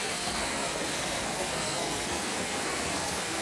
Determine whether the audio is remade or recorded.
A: remade